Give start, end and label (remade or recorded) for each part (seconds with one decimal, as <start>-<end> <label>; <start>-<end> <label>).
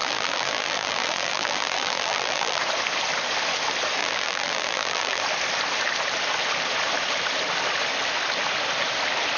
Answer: 0.0-2.6 remade; 2.6-4.0 recorded; 4.0-5.2 remade; 5.2-9.4 recorded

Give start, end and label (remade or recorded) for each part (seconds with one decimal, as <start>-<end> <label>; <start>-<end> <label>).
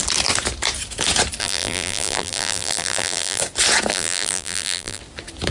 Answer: 0.0-1.4 recorded; 1.4-3.4 remade; 3.4-3.9 recorded; 3.9-5.0 remade; 5.0-5.5 recorded